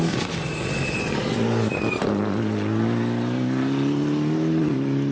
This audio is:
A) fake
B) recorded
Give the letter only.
B